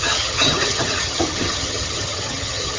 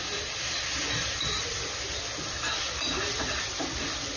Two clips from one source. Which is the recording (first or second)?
second